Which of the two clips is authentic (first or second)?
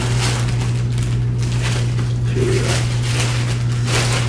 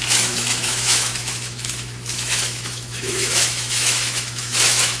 first